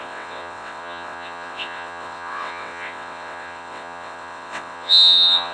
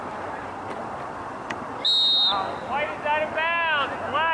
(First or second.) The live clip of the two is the second